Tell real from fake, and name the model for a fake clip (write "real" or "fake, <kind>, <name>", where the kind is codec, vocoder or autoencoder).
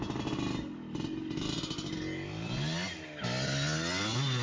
real